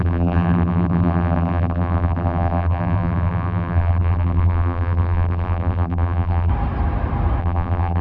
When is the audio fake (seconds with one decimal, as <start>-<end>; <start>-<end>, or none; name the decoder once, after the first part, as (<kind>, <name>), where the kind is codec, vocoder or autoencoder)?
0.0-6.5 (vocoder, BigVGAN v2); 7.4-8.0